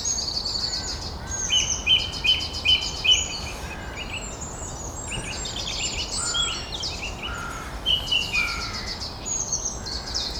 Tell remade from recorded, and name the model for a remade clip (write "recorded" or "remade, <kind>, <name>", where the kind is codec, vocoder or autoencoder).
recorded